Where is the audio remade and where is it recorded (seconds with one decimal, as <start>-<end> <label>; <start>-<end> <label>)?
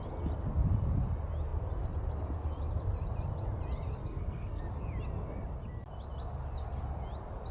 0.0-4.0 recorded; 4.0-4.6 remade; 4.6-7.5 recorded